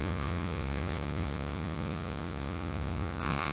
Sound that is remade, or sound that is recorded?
remade